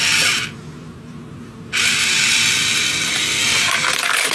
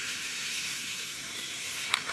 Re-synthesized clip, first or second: second